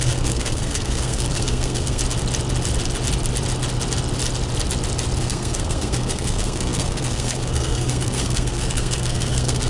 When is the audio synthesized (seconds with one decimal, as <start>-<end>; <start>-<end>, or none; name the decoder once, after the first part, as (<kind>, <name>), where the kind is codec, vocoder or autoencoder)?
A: 0.0-2.0 (codec, SNAC); 5.2-9.7